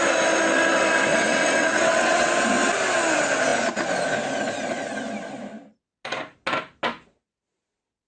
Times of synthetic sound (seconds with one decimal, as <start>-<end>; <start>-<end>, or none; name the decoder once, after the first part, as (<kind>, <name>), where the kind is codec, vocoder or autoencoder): 1.1-2.3 (vocoder, WaveNeXt)